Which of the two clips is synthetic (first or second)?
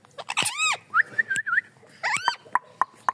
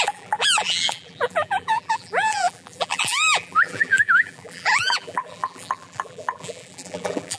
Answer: second